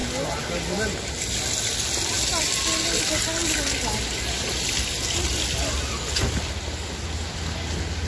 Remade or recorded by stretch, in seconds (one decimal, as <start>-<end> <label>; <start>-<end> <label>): 0.0-8.1 recorded